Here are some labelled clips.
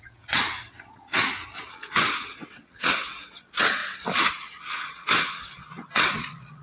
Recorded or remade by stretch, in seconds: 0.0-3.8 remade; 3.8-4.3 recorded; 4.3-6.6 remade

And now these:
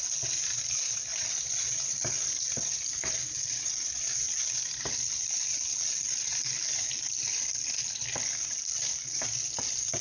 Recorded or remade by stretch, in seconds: 0.0-10.0 recorded